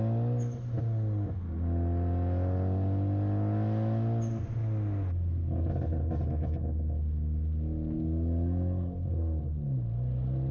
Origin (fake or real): real